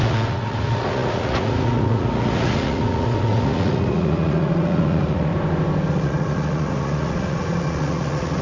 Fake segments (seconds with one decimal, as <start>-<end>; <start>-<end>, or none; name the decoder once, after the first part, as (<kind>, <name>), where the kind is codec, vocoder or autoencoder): 0.0-5.3 (vocoder, Vocos); 5.9-8.4